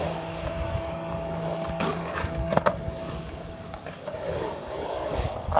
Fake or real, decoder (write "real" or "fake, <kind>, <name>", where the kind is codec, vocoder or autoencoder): fake, codec, DAC